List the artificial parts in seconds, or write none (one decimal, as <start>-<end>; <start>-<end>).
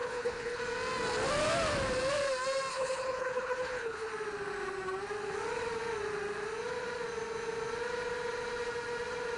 0.0-0.6; 2.7-4.1